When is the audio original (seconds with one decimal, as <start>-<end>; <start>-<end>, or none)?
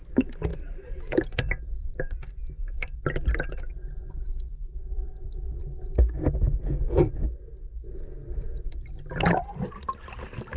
0.0-0.5; 3.1-10.6